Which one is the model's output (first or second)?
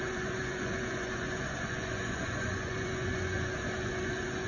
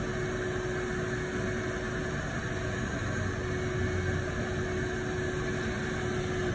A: first